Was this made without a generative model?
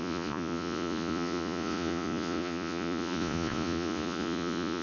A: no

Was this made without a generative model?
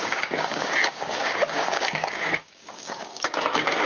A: no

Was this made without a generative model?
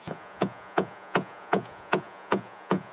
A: no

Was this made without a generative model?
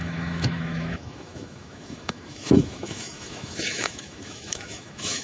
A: no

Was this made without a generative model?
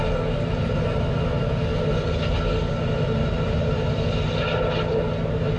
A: yes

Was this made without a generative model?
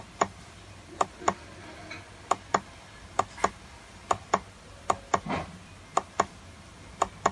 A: yes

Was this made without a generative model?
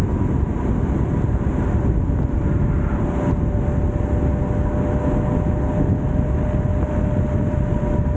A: yes